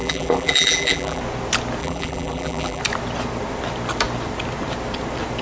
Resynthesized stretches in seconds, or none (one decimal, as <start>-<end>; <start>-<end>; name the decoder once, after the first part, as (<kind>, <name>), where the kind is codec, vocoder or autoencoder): 0.0-1.2 (vocoder, BigVGAN v2); 1.8-2.8